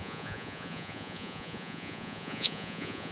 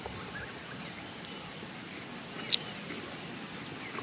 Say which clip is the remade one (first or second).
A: first